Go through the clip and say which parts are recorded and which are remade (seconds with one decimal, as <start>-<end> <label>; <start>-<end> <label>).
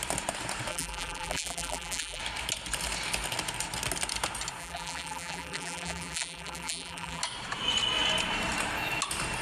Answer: 0.0-0.7 recorded; 0.7-2.2 remade; 2.2-4.6 recorded; 4.6-7.2 remade; 7.2-9.4 recorded